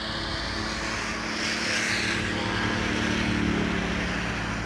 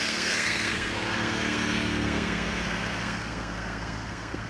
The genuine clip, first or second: first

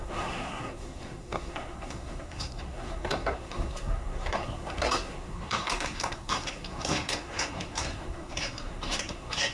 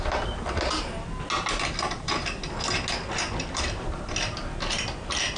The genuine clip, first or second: second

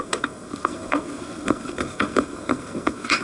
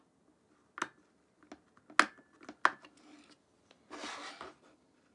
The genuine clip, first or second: second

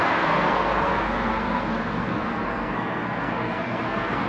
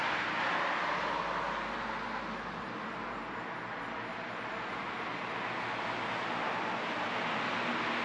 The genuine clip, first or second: second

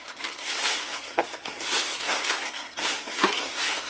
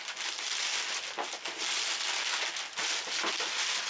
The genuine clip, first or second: second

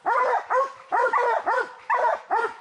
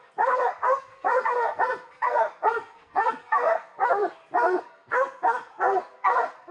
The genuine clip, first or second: first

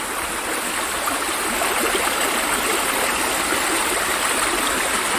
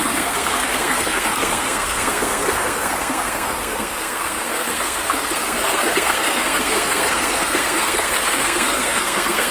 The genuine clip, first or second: first